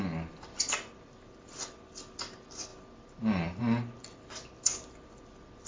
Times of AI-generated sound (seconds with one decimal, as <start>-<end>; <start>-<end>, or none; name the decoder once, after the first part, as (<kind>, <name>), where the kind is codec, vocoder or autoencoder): none